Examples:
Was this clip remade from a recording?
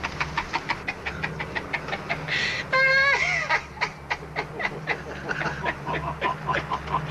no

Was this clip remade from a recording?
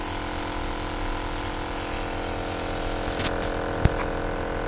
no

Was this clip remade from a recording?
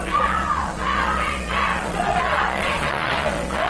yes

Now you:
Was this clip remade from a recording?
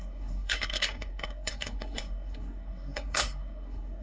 yes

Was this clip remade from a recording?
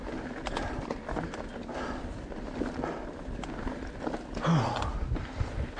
no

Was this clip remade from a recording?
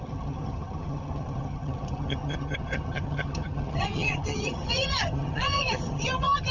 yes